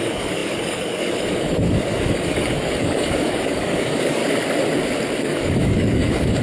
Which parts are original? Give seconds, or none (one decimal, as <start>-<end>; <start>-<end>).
4.2-5.2